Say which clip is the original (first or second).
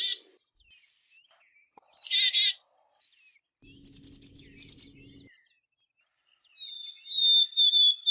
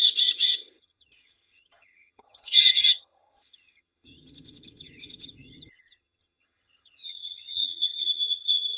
first